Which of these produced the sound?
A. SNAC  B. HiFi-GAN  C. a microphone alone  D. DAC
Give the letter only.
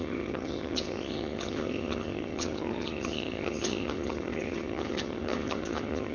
B